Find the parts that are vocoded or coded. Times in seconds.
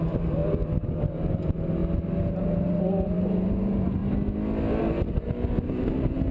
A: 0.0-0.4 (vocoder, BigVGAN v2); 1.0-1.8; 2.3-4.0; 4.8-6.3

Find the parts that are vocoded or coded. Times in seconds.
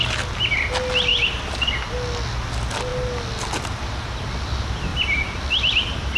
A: 1.1-1.6 (vocoder, BigVGAN v2); 4.9-6.2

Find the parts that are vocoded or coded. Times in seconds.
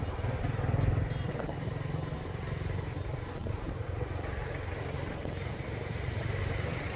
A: 3.4-5.1 (vocoder, BigVGAN v2); 5.5-6.4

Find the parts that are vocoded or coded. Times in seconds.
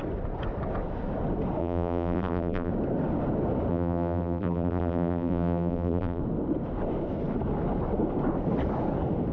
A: 1.6-2.7 (vocoder, BigVGAN v2); 3.7-6.2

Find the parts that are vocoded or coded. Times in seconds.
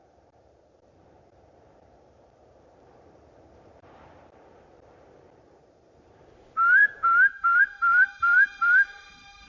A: 0.0-9.5 (vocoder, BigVGAN v2)